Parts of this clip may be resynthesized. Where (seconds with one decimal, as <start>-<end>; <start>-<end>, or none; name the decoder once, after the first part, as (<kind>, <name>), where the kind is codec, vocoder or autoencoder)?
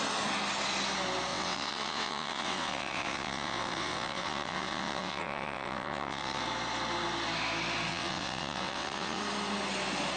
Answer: 1.3-6.4 (vocoder, WaveNeXt); 7.9-9.2